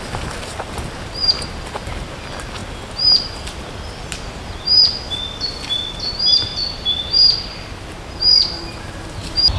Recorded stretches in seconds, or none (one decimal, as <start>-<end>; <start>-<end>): 0.0-9.6